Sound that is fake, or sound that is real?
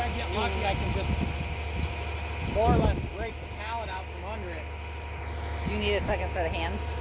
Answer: real